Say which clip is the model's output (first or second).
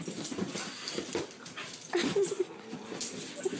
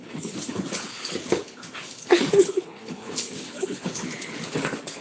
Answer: second